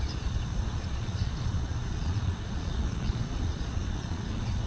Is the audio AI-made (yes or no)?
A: yes